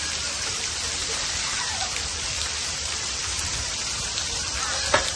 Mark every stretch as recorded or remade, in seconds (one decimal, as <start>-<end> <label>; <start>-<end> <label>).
0.0-1.8 recorded; 1.8-3.5 remade; 3.5-5.2 recorded